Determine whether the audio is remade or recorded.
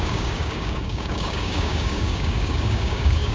remade